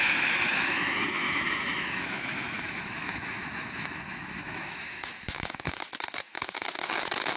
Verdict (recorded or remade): remade